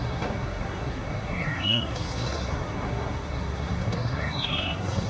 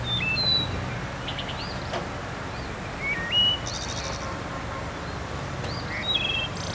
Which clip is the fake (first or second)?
first